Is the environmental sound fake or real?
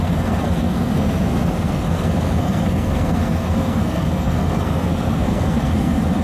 fake